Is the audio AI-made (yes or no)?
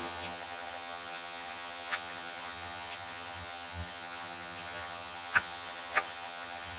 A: yes